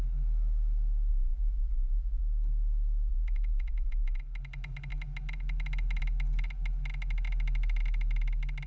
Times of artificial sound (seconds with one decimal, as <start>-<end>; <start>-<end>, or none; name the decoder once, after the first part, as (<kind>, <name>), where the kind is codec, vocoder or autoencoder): 1.1-2.2 (vocoder, Vocos); 3.1-4.2